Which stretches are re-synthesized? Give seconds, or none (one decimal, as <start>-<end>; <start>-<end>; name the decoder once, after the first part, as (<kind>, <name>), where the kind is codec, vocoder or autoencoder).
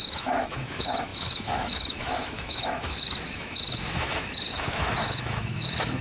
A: 0.0-6.0 (autoencoder, DAC-VAE)